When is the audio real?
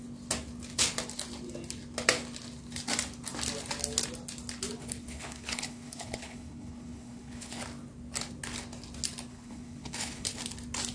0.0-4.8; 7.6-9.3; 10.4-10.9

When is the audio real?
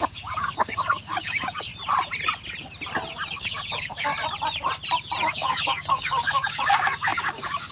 1.7-3.3; 4.1-5.3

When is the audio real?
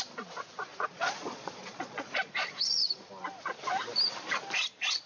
0.0-0.7; 3.0-5.1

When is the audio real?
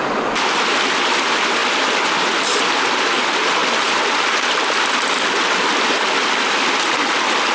0.0-1.6; 2.8-7.5